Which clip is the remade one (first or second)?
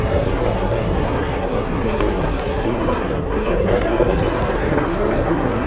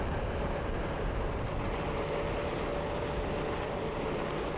first